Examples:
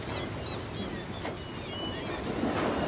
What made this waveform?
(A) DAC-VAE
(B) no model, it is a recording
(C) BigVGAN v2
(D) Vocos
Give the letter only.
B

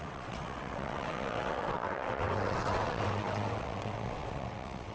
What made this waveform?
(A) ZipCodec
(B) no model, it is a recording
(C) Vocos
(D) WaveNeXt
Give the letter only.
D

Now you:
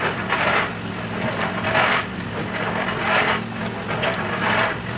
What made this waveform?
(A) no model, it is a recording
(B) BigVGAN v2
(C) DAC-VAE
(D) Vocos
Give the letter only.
A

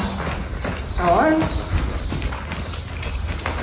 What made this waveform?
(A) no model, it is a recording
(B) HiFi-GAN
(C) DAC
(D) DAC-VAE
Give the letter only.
A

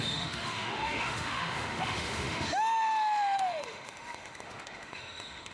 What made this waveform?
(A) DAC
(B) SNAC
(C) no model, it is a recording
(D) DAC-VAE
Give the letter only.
D